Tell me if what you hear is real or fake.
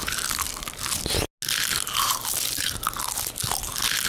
real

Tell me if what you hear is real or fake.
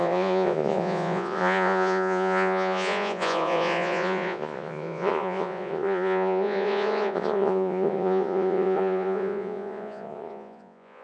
fake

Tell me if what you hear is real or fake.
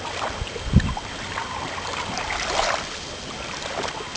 real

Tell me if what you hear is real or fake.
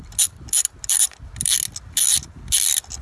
real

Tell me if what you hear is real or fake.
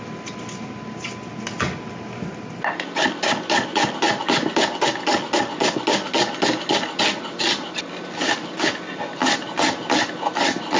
real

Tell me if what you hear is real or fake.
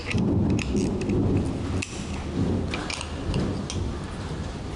real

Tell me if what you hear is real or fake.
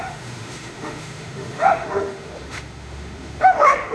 fake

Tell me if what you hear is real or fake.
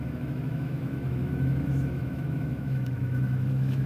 fake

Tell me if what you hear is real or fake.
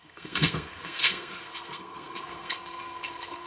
fake